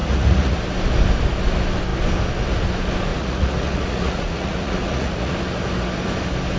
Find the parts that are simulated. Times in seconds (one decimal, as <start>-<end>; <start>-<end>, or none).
0.0-0.6; 3.1-5.4